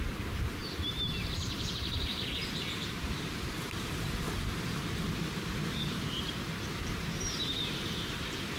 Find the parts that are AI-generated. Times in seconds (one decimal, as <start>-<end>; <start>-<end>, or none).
0.0-8.6